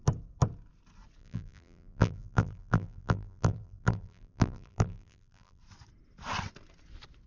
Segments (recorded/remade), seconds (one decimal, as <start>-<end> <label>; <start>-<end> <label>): 0.0-1.2 recorded; 1.2-5.6 remade; 5.6-7.3 recorded